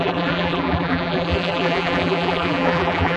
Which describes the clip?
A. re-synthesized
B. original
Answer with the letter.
A